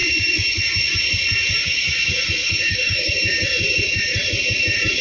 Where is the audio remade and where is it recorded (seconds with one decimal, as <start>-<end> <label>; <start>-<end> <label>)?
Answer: 0.0-2.4 recorded; 2.4-3.1 remade; 3.1-5.0 recorded